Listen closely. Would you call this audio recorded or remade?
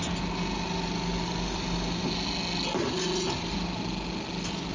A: recorded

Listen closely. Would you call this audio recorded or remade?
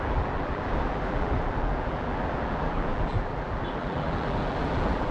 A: remade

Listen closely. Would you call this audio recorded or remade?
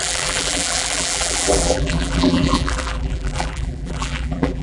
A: remade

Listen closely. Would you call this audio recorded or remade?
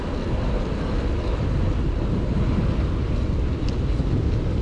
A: recorded